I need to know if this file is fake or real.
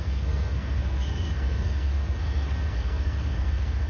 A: fake